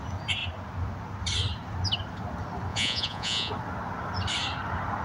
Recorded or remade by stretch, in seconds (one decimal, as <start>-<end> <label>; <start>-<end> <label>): 0.0-2.7 recorded; 2.7-3.5 remade; 3.5-5.0 recorded